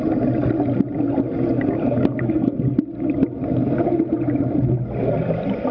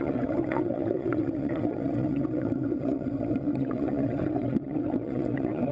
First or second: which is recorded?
first